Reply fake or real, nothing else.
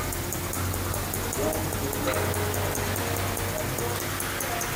real